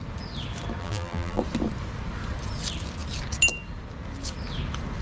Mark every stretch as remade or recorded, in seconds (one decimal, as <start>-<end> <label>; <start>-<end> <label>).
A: 0.0-0.8 recorded; 0.8-1.4 remade; 1.4-5.0 recorded